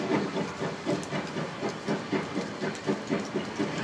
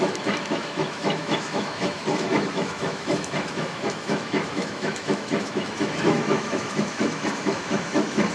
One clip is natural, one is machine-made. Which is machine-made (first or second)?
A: second